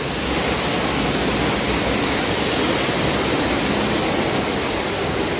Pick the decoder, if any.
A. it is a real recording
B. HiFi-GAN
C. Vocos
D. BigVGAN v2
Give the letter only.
A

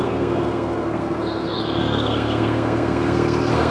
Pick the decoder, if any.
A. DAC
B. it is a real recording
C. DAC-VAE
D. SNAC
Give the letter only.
D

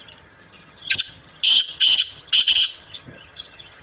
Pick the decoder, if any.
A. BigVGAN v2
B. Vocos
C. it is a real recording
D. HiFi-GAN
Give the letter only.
D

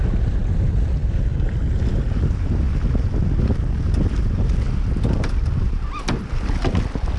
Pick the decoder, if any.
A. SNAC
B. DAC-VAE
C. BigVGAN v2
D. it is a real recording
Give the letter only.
D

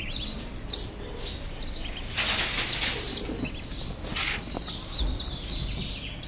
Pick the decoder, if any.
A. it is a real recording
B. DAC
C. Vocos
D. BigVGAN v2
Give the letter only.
A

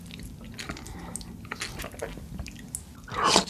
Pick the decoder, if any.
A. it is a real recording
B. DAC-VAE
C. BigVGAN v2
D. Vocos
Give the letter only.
A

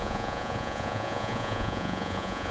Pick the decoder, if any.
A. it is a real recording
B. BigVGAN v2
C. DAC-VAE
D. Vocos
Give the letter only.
D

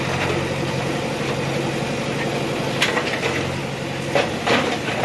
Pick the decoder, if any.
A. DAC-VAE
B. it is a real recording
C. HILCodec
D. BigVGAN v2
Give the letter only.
B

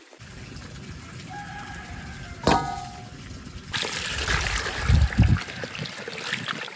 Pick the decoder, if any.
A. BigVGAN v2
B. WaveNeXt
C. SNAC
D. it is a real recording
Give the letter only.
D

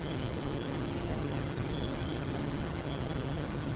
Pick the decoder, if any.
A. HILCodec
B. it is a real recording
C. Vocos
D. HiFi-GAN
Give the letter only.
D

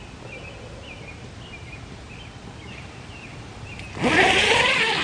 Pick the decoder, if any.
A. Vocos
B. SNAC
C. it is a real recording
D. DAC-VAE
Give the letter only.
C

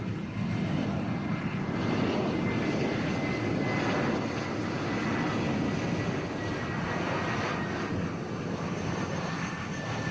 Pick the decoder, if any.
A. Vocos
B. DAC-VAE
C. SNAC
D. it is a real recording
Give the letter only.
D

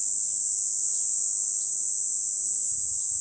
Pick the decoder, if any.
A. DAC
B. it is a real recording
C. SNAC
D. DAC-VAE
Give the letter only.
B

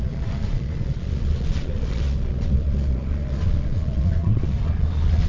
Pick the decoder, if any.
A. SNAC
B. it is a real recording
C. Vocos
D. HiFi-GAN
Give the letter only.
C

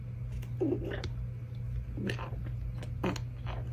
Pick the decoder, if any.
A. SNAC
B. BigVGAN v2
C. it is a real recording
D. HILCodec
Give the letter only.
C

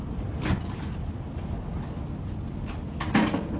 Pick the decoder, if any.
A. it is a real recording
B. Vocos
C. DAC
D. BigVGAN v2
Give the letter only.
A